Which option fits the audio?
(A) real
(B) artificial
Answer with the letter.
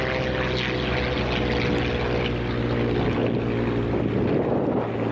A